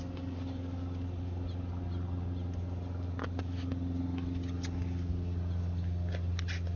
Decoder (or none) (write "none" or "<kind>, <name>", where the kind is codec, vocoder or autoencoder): none